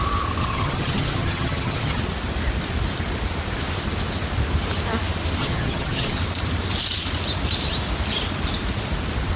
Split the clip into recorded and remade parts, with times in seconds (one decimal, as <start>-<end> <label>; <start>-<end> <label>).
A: 0.0-0.4 recorded; 0.4-2.0 remade; 2.0-5.4 recorded; 5.4-6.2 remade; 6.2-9.4 recorded